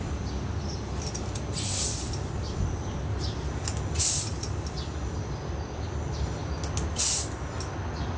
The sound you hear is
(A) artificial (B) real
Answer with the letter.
B